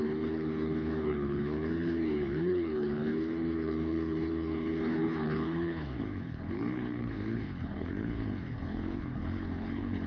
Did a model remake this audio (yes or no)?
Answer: yes